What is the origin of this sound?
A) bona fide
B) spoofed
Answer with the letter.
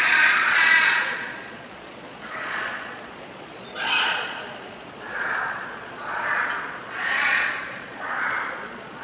B